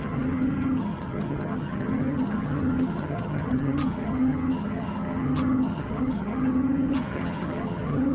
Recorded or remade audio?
remade